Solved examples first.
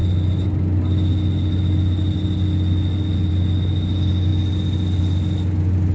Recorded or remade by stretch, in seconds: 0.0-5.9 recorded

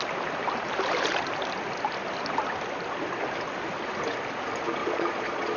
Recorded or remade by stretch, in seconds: 0.0-4.8 recorded; 4.8-5.6 remade